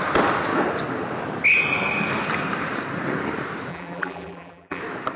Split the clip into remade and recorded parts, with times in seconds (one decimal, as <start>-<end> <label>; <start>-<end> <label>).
0.0-3.7 recorded; 3.7-4.8 remade; 4.8-5.2 recorded